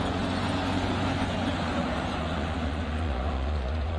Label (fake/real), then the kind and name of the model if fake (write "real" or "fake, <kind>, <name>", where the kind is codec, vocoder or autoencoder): fake, vocoder, Vocos